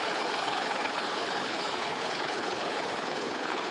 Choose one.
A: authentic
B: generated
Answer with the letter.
B